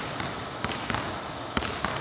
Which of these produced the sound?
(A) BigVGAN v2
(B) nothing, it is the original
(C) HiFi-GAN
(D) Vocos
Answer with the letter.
B